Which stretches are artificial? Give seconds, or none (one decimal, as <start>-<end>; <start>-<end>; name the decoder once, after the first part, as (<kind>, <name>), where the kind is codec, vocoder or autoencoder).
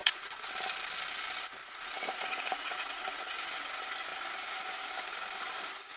0.0-0.5 (vocoder, Vocos); 1.6-3.3